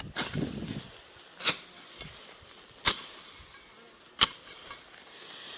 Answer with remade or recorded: recorded